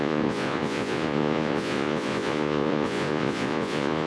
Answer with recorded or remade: remade